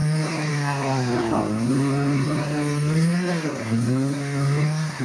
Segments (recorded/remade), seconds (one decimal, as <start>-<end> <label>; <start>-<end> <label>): 0.0-5.0 remade